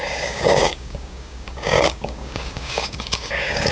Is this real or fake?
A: fake